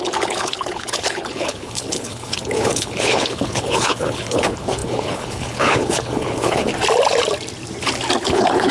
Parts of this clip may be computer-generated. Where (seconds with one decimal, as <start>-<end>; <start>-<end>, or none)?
0.0-6.7; 8.2-8.7

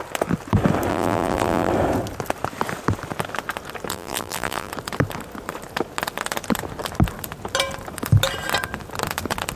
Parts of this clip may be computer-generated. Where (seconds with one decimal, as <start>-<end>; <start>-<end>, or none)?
0.9-1.7; 3.9-4.7

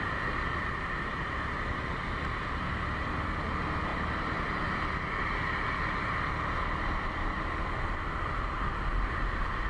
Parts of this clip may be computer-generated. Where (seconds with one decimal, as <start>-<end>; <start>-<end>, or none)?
none

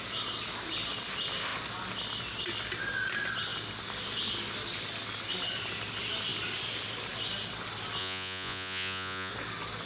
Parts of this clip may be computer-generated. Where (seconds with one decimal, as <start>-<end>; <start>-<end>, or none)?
8.0-9.3

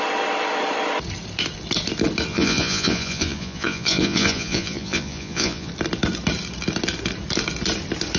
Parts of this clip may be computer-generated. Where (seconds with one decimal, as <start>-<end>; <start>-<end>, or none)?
2.3-5.7

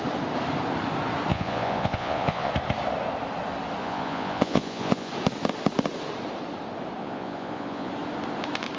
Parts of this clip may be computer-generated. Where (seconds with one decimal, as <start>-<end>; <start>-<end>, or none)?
1.3-2.5; 3.8-5.1; 7.0-7.9

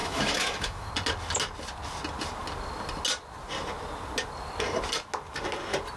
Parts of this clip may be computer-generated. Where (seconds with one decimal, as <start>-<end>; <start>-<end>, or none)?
0.0-0.9

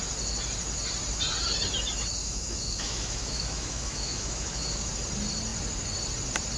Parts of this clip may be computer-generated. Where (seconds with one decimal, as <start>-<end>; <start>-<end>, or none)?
2.2-4.9